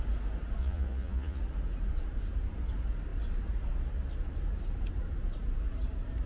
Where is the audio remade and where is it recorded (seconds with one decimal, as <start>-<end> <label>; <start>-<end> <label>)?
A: 0.0-0.6 recorded; 0.6-1.4 remade; 1.4-6.3 recorded